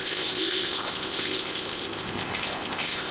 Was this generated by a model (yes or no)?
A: yes